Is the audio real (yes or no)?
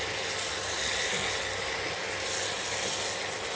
yes